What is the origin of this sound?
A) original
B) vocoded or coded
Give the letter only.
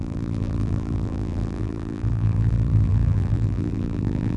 B